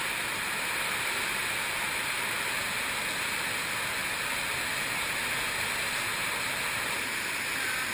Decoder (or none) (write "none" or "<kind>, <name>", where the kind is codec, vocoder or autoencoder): none